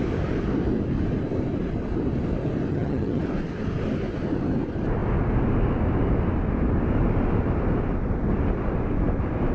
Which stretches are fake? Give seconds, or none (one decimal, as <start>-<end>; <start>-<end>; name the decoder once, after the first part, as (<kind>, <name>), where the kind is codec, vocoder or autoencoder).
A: 2.7-3.2 (vocoder, HiFi-GAN)